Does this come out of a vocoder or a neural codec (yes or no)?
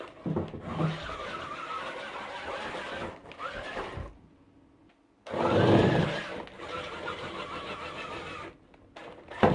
no